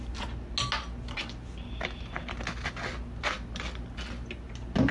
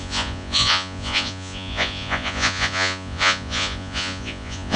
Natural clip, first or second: first